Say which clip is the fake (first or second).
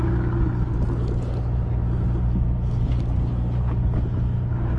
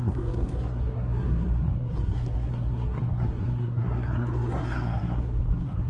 second